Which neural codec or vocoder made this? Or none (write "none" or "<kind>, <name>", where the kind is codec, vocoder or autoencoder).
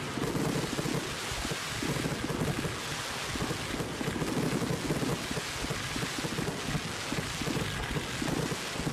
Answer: none